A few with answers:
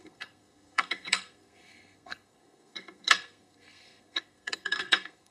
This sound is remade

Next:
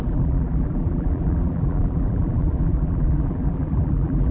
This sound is remade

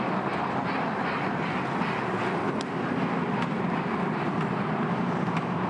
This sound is recorded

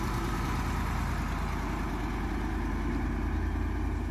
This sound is recorded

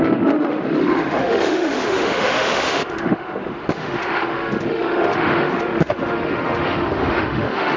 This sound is remade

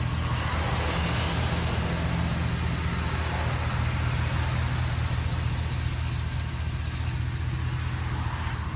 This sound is recorded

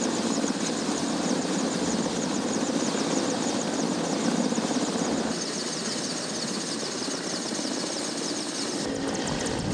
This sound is recorded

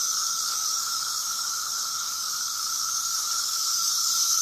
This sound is remade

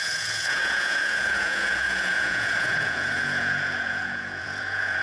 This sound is remade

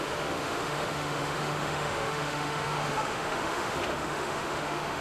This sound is remade